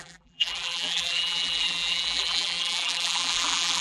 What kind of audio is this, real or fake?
fake